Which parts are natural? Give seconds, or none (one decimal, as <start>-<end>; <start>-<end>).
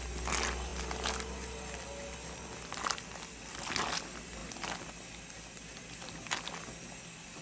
0.0-7.4